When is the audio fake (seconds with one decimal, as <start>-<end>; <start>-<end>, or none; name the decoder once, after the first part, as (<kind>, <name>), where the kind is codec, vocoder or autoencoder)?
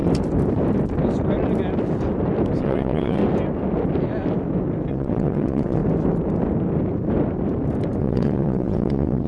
2.6-3.2 (vocoder, WaveNeXt); 4.9-5.8; 8.0-9.3